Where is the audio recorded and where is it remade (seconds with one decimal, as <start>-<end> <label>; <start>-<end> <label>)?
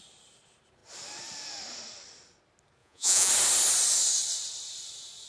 0.0-2.8 recorded; 2.8-3.3 remade; 3.3-5.3 recorded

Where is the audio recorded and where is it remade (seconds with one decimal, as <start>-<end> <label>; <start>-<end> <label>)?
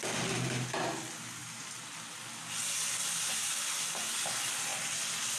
0.0-5.4 recorded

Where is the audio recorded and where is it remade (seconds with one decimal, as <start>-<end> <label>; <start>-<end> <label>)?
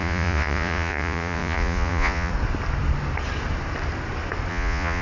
0.0-2.3 remade; 2.3-4.5 recorded; 4.5-5.0 remade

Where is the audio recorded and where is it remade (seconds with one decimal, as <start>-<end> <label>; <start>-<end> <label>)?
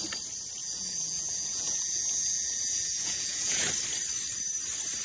0.0-0.6 recorded; 0.6-3.6 remade; 3.6-5.0 recorded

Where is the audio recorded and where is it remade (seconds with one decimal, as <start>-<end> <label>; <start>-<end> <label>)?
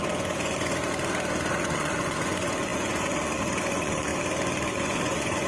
0.0-0.8 remade; 0.8-1.5 recorded; 1.5-4.1 remade; 4.1-4.7 recorded; 4.7-5.5 remade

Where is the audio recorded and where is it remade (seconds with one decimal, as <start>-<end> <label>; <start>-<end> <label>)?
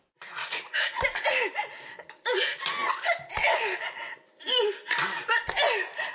0.0-0.4 recorded; 0.4-1.0 remade; 1.0-6.1 recorded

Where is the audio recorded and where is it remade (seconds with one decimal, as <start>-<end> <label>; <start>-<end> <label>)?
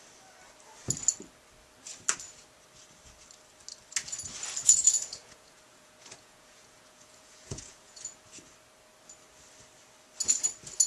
0.0-4.6 recorded; 4.6-8.4 remade; 8.4-10.9 recorded